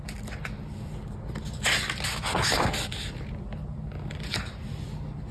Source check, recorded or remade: recorded